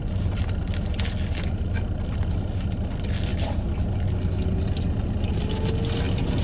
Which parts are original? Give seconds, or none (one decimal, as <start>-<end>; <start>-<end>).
0.0-6.4